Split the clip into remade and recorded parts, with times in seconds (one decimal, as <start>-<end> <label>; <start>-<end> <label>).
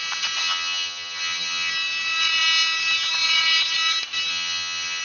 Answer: 0.0-0.4 recorded; 0.4-1.7 remade; 1.7-4.3 recorded; 4.3-5.0 remade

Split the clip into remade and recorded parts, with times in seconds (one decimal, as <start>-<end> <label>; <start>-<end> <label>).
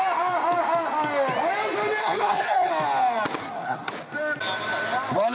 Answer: 0.0-2.0 recorded; 2.0-2.7 remade; 2.7-3.4 recorded; 3.4-3.9 remade; 3.9-5.3 recorded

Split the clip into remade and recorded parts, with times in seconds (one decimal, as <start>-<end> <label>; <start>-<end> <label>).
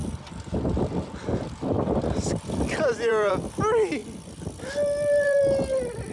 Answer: 0.0-3.3 remade; 3.3-4.0 recorded; 4.0-5.4 remade; 5.4-6.1 recorded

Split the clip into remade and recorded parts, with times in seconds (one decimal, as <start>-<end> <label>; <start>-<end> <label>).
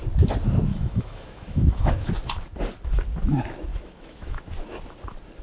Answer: 0.0-0.7 recorded; 0.7-2.1 remade; 2.1-3.7 recorded; 3.7-4.4 remade; 4.4-5.4 recorded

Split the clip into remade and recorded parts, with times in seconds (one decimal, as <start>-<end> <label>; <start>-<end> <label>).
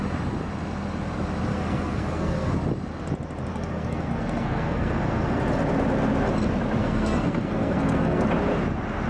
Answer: 0.0-1.5 recorded; 1.5-2.5 remade; 2.5-3.5 recorded; 3.5-5.4 remade; 5.4-6.8 recorded; 6.8-8.2 remade; 8.2-9.1 recorded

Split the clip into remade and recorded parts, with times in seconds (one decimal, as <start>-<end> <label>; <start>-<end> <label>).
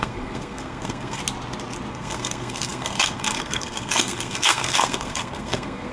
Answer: 0.0-1.2 remade; 1.2-1.9 recorded; 1.9-5.9 remade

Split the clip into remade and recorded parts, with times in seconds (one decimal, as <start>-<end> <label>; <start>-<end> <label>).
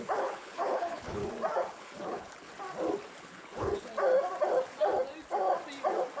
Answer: 0.0-1.2 remade; 1.2-1.7 recorded; 1.7-2.5 remade; 2.5-3.2 recorded; 3.2-3.9 remade; 3.9-6.2 recorded